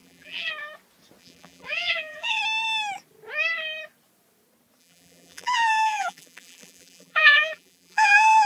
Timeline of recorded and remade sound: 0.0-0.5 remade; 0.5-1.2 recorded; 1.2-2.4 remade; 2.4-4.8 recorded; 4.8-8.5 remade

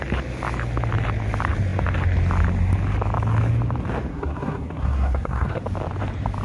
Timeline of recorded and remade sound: 0.0-4.1 recorded; 4.1-5.6 remade; 5.6-6.4 recorded

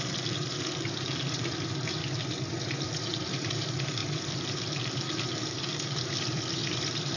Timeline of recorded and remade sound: 0.0-2.0 remade; 2.0-2.5 recorded; 2.5-7.2 remade